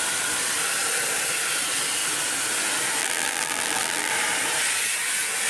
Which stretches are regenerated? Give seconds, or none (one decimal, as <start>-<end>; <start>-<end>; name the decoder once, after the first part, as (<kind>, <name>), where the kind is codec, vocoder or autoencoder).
3.0-4.1 (vocoder, BigVGAN v2)